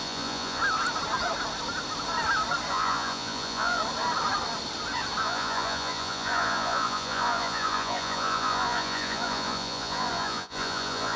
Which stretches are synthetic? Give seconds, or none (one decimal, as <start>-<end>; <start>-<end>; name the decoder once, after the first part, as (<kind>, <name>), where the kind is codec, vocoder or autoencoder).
0.0-0.6 (vocoder, Vocos); 2.7-3.8; 5.2-11.2